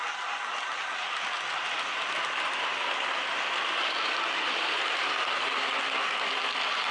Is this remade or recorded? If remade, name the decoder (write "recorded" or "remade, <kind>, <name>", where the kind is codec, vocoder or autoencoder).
recorded